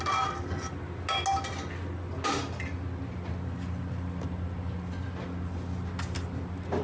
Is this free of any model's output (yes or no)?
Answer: yes